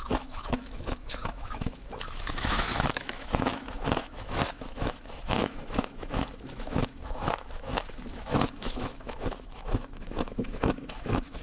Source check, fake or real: fake